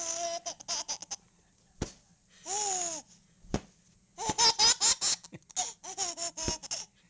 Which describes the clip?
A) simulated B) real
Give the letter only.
B